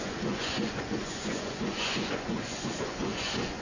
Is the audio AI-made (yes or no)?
yes